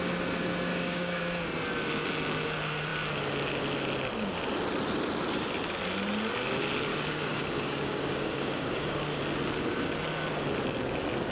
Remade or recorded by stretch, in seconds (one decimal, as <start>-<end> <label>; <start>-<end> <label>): 0.0-0.7 recorded; 0.7-1.2 remade; 1.2-6.9 recorded; 6.9-9.2 remade; 9.2-11.3 recorded